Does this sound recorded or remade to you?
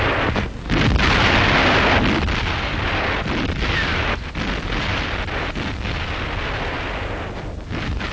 recorded